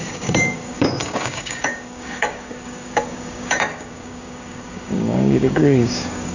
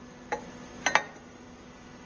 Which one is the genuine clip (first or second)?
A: second